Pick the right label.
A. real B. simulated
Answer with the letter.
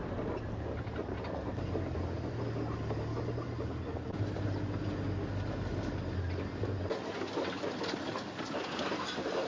A